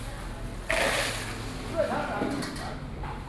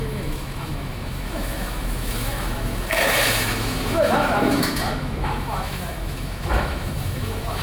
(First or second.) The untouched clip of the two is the first